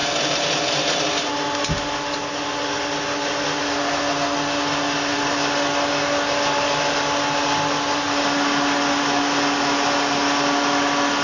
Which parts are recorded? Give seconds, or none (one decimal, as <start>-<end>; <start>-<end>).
0.0-11.2